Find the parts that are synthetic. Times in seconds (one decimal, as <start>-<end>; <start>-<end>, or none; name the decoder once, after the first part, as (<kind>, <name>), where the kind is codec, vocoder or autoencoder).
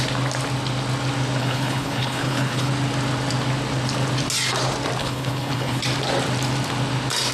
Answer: 1.4-2.7 (codec, HILCodec); 5.0-5.8